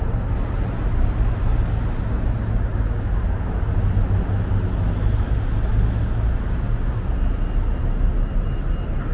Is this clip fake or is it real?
real